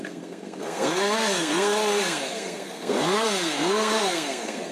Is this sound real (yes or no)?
no